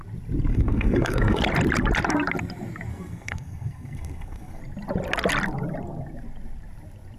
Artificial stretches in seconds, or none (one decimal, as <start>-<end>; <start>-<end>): 0.5-1.4; 2.9-4.6